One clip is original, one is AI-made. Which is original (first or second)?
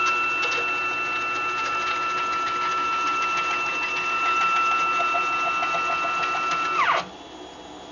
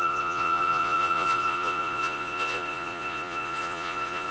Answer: first